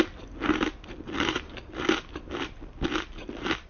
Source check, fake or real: real